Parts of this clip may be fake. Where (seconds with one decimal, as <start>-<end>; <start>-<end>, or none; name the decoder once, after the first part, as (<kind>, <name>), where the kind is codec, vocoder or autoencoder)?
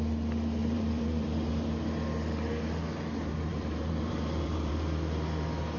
0.6-1.5 (vocoder, BigVGAN v2); 3.5-4.7